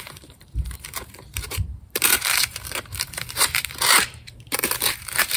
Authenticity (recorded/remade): remade